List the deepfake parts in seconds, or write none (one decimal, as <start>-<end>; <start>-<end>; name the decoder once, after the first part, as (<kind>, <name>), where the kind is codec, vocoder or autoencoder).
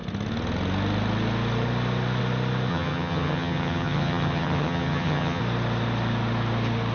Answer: 2.7-5.4 (vocoder, HiFi-GAN)